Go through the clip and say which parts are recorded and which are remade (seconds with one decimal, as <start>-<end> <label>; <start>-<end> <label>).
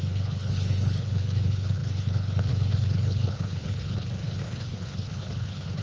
0.0-5.8 remade